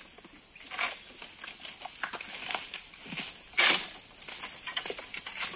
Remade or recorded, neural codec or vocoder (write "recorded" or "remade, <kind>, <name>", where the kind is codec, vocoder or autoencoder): recorded